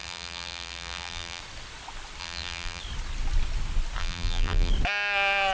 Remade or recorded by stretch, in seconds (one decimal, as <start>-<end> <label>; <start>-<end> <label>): 0.0-1.4 remade; 1.4-2.2 recorded; 2.2-2.8 remade; 2.8-4.0 recorded; 4.0-4.7 remade; 4.7-5.5 recorded